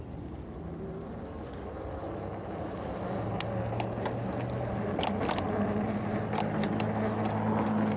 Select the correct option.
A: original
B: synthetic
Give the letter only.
A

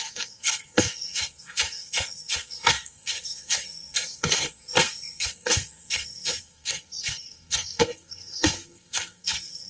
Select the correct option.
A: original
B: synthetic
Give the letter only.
B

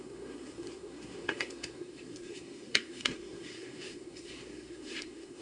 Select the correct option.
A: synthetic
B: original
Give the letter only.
A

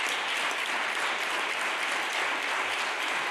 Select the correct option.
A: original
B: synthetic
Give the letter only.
A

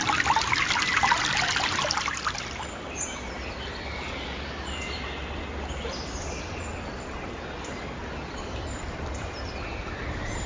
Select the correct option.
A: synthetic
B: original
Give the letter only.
B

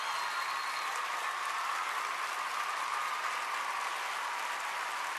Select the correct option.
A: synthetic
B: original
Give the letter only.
B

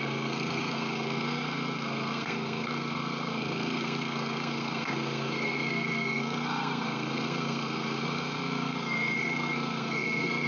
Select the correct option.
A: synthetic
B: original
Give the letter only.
A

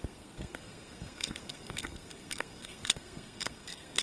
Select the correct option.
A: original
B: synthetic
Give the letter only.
B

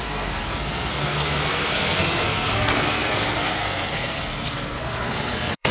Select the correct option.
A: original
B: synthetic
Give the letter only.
B